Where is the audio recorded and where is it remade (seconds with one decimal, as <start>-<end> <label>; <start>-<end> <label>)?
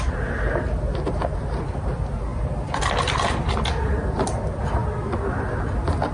0.0-6.1 recorded